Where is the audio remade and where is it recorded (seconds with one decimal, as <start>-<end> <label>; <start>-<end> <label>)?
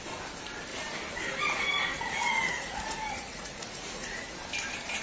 0.0-1.9 recorded; 1.9-4.3 remade; 4.3-5.0 recorded